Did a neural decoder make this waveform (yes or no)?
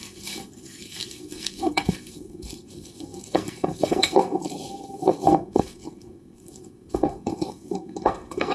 yes